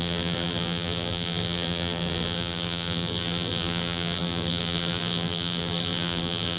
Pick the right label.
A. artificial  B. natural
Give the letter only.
A